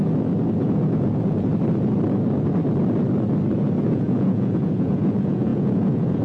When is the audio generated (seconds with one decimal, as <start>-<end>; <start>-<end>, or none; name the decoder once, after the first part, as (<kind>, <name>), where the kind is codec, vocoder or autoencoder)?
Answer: 0.6-1.5 (vocoder, Vocos); 3.9-6.2